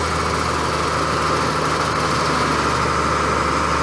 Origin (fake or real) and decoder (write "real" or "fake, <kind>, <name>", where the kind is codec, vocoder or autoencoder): real